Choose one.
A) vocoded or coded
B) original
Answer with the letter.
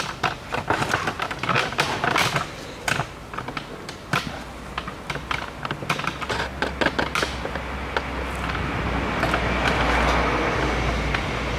B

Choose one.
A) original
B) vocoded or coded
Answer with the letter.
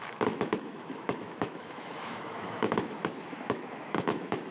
B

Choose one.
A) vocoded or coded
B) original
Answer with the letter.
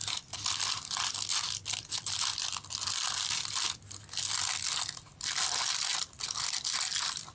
B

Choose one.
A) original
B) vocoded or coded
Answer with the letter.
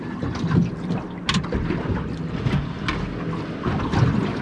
A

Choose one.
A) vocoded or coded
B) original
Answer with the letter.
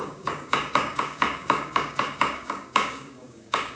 A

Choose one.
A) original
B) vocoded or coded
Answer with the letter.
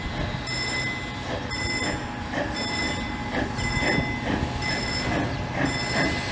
A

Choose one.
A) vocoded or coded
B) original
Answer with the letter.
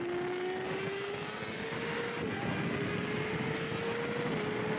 B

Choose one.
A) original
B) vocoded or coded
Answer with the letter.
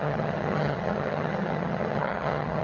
B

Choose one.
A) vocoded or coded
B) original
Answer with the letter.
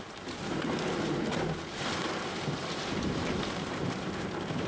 A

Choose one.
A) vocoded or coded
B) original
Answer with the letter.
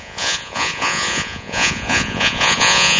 A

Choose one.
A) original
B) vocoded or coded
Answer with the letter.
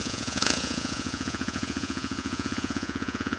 B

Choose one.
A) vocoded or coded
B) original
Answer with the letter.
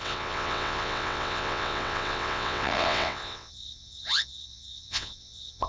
A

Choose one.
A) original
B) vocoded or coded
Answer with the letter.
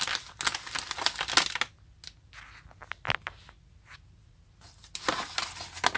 A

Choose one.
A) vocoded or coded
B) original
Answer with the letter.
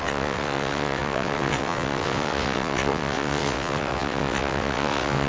A